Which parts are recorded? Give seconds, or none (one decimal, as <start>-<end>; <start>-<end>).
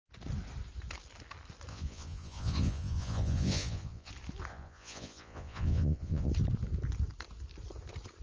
0.0-1.7; 4.1-4.5; 6.3-8.2